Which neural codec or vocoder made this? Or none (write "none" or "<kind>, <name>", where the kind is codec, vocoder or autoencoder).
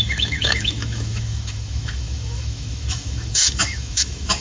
autoencoder, DAC-VAE